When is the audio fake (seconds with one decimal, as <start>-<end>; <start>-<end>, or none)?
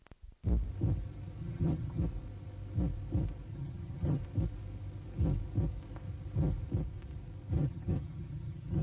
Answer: 1.4-2.0; 3.5-4.2; 7.6-8.8